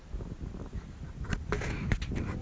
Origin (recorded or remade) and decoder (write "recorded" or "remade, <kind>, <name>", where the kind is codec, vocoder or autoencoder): recorded